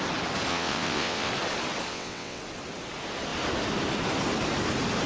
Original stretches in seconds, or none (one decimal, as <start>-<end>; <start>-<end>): 0.0-0.5; 1.3-1.9; 2.4-5.1